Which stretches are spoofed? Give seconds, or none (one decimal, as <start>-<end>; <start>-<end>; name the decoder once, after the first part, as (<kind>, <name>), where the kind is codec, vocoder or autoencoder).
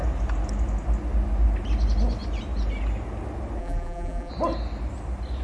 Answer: 3.6-4.3 (vocoder, BigVGAN v2)